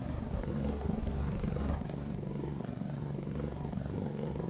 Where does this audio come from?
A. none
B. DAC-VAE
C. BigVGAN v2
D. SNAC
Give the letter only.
D